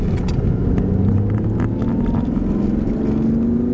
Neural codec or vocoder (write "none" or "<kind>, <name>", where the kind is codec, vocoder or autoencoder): none